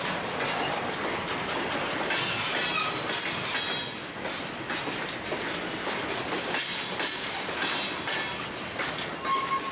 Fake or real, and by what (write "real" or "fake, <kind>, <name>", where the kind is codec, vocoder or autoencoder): real